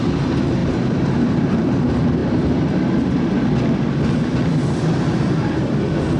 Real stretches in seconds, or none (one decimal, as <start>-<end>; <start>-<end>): 0.0-0.6; 1.8-6.2